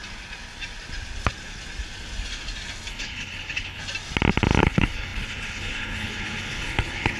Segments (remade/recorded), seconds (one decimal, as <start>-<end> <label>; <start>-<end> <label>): 0.0-2.9 recorded; 2.9-3.8 remade; 3.8-4.6 recorded; 4.6-7.2 remade